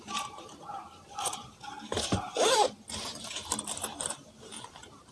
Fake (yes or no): yes